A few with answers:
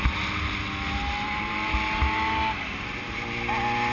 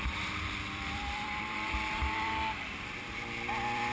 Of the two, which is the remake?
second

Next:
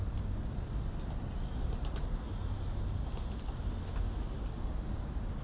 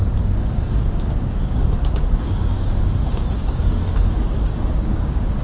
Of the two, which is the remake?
second